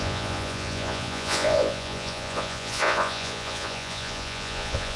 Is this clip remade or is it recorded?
remade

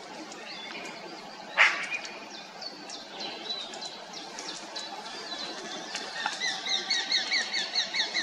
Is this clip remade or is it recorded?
remade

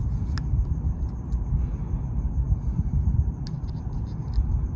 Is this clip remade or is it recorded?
recorded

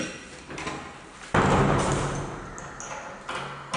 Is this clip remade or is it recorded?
recorded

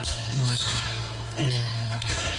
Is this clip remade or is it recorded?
remade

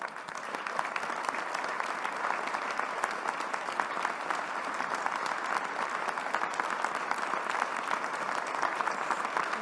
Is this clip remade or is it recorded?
recorded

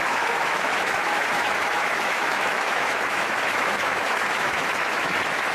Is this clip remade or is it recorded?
remade